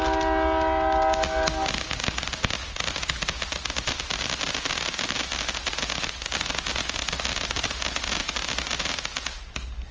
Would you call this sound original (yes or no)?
yes